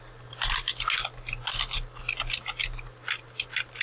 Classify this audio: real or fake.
real